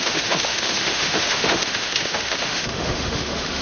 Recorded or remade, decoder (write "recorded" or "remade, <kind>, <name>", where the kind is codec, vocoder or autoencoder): remade, autoencoder, DAC-VAE